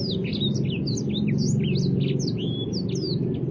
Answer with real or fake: real